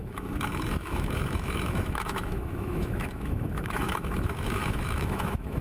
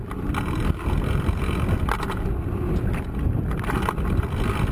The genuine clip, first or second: second